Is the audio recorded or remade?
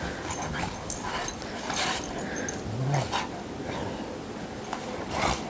recorded